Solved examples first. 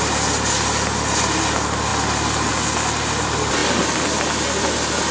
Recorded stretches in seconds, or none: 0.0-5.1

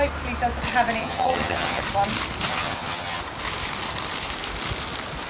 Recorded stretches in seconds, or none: 0.0-1.0; 1.8-2.5; 3.2-5.3

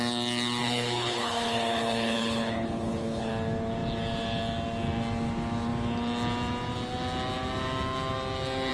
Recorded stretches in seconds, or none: 0.0-0.6; 3.3-8.7